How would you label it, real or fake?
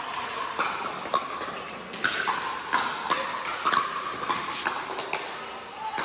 real